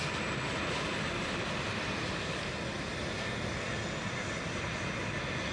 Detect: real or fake real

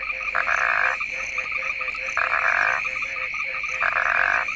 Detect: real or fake real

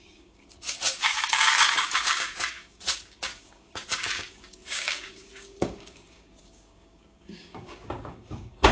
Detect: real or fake fake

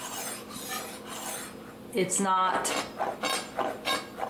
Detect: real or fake real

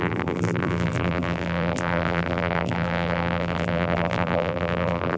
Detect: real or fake fake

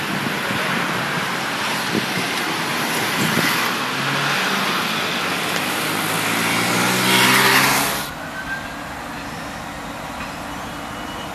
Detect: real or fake real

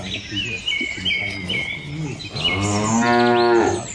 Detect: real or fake real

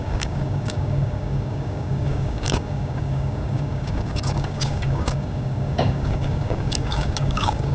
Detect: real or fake fake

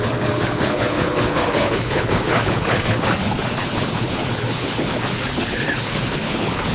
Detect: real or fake fake